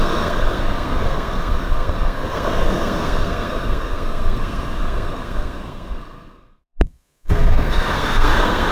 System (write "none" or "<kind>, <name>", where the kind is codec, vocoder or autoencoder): codec, SNAC